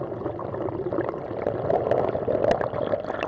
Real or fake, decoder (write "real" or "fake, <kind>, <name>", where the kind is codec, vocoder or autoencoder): real